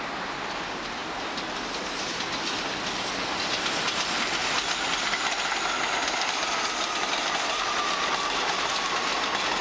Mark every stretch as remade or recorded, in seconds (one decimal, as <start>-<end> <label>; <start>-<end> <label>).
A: 0.0-9.6 recorded